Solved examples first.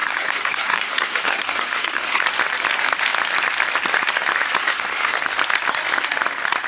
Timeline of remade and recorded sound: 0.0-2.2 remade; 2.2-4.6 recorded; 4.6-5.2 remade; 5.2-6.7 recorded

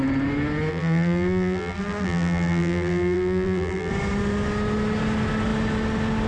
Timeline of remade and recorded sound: 0.0-0.7 recorded; 0.7-3.9 remade; 3.9-6.3 recorded

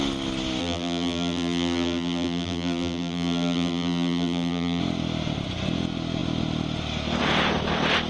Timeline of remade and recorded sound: 0.0-0.6 recorded; 0.6-4.8 remade; 4.8-8.1 recorded

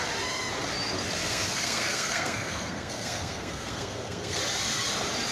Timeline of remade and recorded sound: 0.0-1.2 recorded; 1.2-4.4 remade; 4.4-5.3 recorded

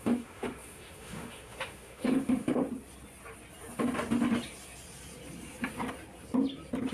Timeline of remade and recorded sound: 0.0-2.6 remade; 2.6-6.9 recorded

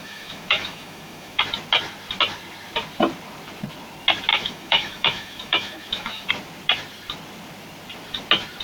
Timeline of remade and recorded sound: 0.0-1.4 remade; 1.4-4.3 recorded; 4.3-6.3 remade; 6.3-8.6 recorded